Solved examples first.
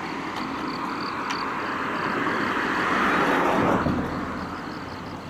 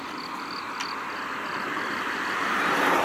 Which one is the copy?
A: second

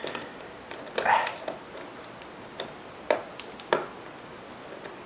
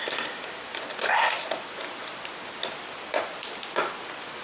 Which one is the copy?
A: second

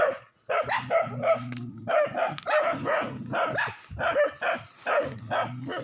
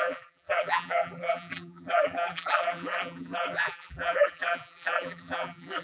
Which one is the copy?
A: second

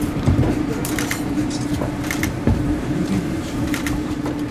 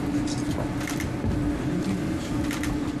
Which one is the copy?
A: first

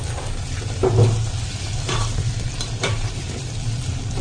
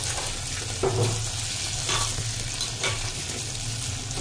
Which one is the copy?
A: first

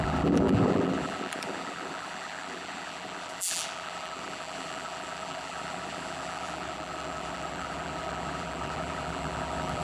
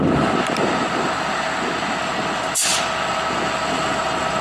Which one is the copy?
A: first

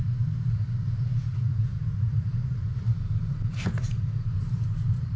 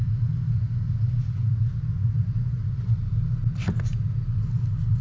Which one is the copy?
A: first